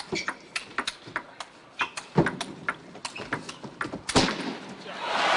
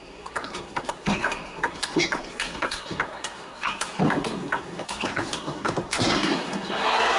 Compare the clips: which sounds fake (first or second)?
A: second